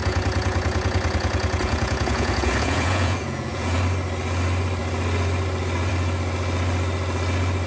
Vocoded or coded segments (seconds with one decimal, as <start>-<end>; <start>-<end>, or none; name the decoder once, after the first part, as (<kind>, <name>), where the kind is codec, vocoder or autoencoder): 0.0-3.8 (vocoder, Vocos)